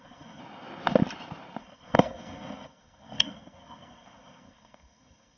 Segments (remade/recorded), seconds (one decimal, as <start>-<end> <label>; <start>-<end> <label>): 0.0-0.4 remade; 0.4-1.6 recorded; 1.6-5.4 remade